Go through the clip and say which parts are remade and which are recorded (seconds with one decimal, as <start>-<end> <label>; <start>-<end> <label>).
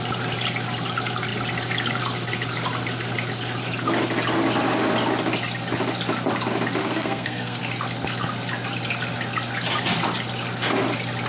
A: 0.0-6.8 recorded; 6.8-7.6 remade; 7.6-11.3 recorded